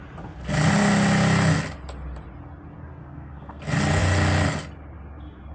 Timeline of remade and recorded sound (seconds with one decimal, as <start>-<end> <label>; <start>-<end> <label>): 0.0-3.0 recorded; 3.0-3.6 remade; 3.6-5.5 recorded